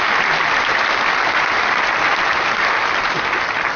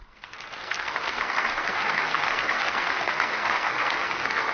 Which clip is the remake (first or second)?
second